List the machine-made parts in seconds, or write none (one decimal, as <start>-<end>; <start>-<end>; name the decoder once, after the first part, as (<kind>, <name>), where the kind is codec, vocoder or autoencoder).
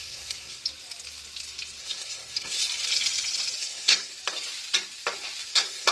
0.0-0.6 (codec, SNAC); 1.8-2.6; 3.6-4.1; 5.5-5.9